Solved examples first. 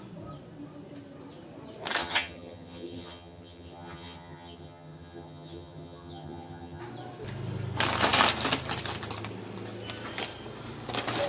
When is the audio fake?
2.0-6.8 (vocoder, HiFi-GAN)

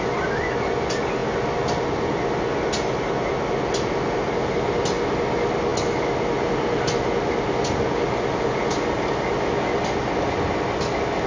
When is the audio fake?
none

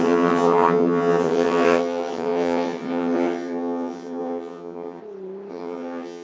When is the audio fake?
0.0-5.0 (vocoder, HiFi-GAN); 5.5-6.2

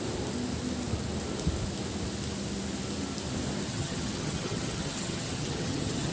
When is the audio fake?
3.7-6.1 (vocoder, HiFi-GAN)

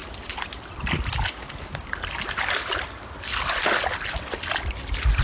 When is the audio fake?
none

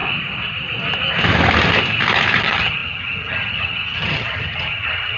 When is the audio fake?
2.4-5.2 (vocoder, HiFi-GAN)